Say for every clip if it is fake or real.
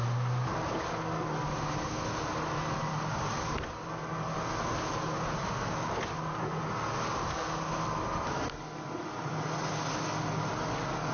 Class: real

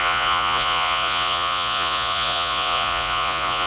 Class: fake